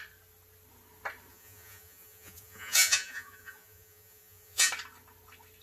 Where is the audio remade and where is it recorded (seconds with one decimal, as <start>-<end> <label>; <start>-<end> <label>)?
0.0-1.3 recorded; 1.3-4.7 remade; 4.7-5.6 recorded